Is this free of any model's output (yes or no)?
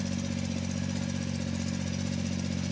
yes